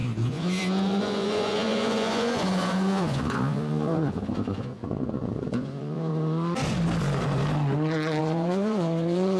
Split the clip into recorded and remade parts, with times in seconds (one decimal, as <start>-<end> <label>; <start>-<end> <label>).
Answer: 0.0-6.1 remade; 6.1-8.2 recorded; 8.2-9.4 remade